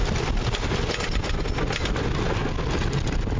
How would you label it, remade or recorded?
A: recorded